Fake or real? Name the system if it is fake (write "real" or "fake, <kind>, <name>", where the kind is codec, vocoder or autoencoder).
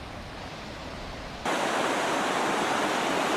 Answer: real